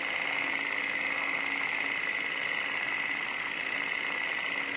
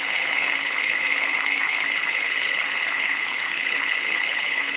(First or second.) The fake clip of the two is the second